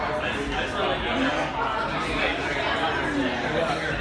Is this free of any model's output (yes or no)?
yes